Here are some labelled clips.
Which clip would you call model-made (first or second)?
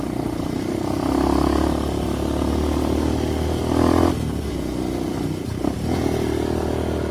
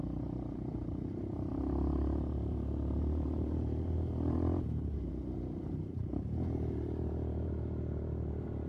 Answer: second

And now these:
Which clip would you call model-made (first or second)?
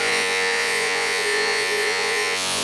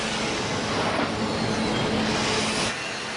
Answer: first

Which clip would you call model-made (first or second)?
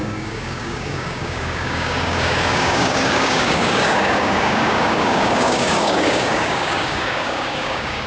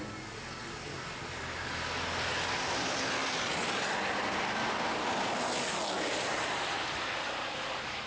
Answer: first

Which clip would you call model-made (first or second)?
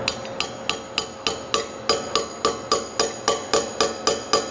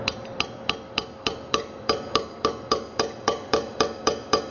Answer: second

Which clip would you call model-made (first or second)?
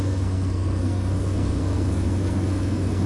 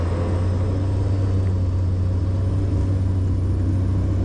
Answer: first